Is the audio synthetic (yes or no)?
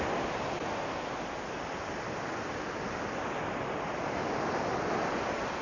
no